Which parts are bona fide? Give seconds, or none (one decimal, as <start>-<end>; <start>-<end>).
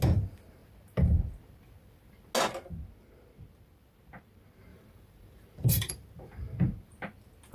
0.0-4.7; 5.9-7.5